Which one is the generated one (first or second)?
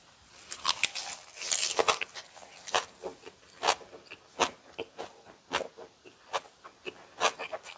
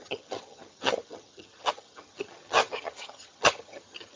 second